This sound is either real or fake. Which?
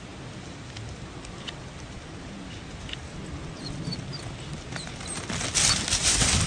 real